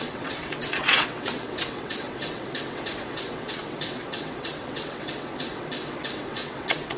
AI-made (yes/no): yes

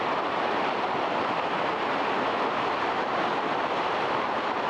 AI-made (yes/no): no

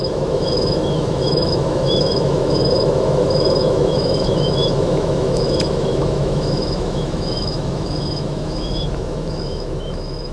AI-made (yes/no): yes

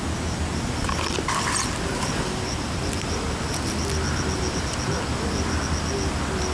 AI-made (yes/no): no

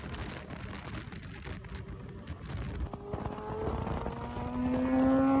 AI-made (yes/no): no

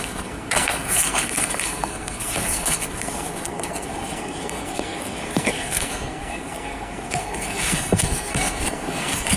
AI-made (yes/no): yes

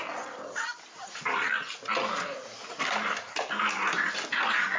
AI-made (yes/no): no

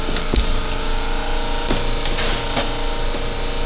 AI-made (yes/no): no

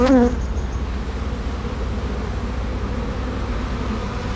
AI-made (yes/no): no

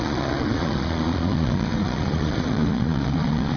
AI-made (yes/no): yes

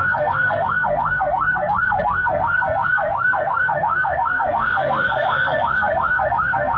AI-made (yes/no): yes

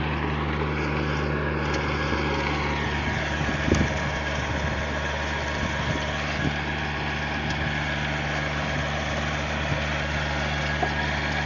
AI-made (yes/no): no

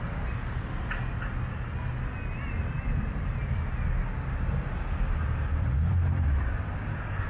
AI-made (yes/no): no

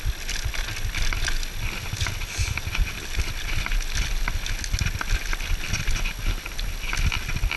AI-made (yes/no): no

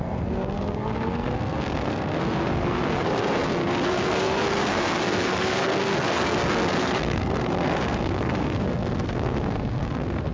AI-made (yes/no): yes